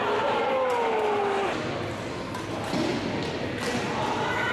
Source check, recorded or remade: recorded